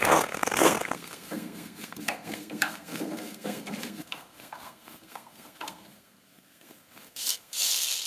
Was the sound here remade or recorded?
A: remade